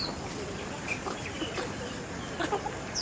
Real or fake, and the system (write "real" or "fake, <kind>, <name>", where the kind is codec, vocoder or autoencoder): real